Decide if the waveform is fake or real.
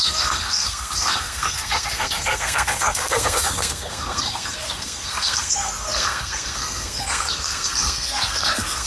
fake